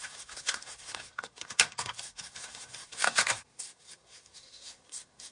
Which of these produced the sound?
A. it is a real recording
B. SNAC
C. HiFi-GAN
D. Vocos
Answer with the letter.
B